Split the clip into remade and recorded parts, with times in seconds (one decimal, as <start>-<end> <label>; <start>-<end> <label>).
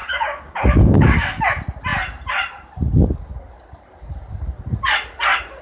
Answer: 0.0-1.4 remade; 1.4-5.6 recorded